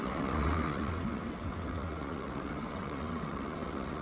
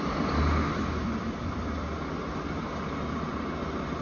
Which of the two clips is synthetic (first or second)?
first